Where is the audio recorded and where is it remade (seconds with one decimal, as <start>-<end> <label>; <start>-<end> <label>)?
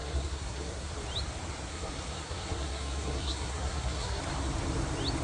0.0-0.9 remade; 0.9-1.7 recorded; 1.7-4.2 remade; 4.2-5.2 recorded